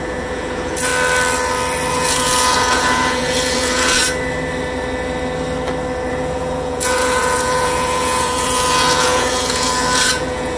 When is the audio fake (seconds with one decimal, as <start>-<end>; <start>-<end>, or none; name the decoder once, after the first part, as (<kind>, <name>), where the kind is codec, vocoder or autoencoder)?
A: 0.0-0.9 (vocoder, Vocos); 1.9-4.0; 6.1-10.6